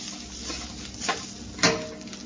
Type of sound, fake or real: real